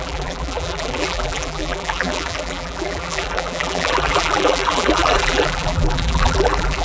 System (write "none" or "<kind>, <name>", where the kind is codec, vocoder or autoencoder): vocoder, BigVGAN v2